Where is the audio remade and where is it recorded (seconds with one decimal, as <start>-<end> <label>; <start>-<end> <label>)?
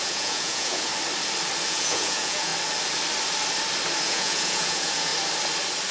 0.0-0.9 remade; 0.9-1.7 recorded; 1.7-2.5 remade; 2.5-4.0 recorded; 4.0-5.1 remade; 5.1-5.9 recorded